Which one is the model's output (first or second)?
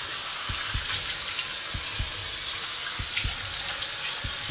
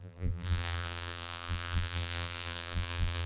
second